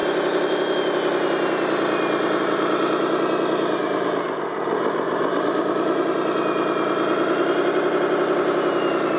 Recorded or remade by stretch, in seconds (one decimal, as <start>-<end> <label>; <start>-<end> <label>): 0.0-9.2 recorded